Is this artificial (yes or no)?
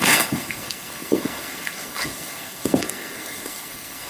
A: yes